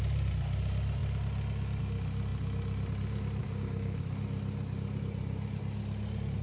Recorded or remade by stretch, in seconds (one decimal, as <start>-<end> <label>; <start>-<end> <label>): 0.0-3.4 recorded; 3.4-4.0 remade; 4.0-6.4 recorded